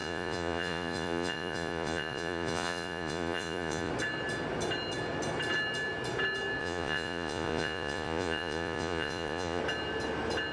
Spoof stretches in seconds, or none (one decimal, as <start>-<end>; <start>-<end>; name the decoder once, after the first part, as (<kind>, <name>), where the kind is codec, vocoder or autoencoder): 0.0-3.9 (vocoder, Vocos); 6.6-9.6